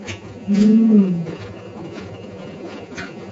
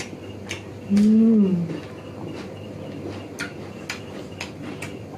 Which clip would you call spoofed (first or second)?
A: first